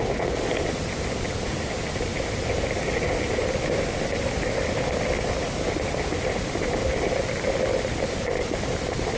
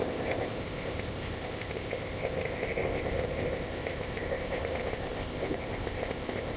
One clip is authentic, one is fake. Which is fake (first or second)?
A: second